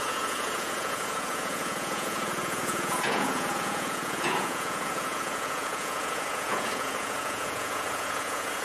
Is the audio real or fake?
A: fake